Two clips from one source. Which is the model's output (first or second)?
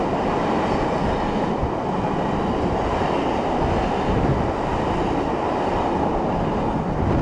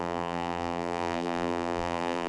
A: second